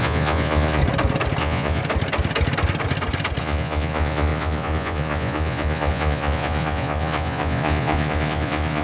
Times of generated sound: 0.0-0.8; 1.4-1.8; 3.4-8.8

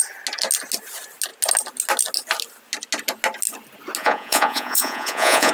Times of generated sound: 4.0-5.5

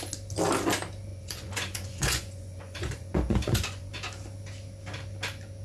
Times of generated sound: 1.1-3.9

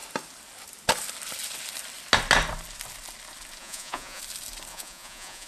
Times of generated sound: 3.6-4.2; 4.7-5.5

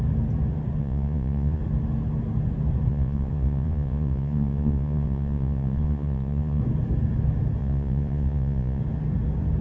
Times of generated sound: 0.8-1.6; 2.9-6.6; 7.6-8.8

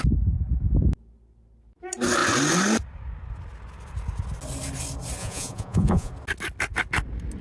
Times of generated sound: 5.2-6.1

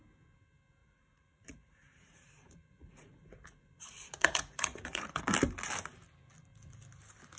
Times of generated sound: 0.8-5.2